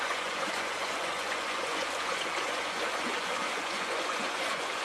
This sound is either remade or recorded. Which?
remade